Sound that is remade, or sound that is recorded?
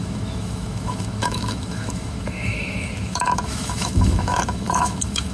remade